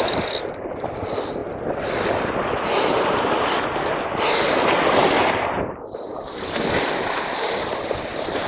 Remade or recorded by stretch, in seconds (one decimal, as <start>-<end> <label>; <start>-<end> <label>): 0.0-8.5 recorded